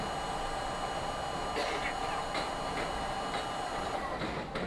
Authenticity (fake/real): real